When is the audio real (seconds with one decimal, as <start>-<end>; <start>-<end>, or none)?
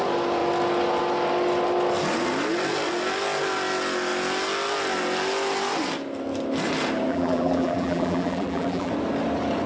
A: 0.0-7.1; 8.9-9.7